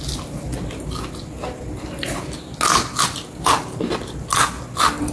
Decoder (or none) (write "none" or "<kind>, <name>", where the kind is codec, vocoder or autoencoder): none